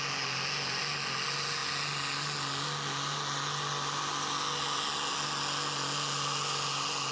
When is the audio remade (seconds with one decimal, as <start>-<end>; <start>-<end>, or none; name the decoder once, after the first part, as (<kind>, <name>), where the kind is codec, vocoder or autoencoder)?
none